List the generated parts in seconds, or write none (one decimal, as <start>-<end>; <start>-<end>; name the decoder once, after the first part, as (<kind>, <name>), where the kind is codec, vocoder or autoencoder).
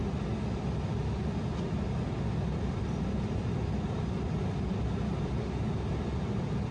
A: none